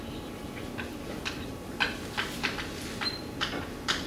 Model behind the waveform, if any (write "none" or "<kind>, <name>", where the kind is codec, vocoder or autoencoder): none